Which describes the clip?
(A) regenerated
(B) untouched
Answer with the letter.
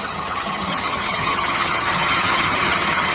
A